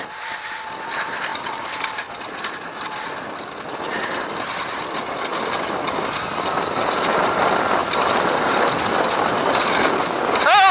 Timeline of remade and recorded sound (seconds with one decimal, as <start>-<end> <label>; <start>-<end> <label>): 0.0-10.7 recorded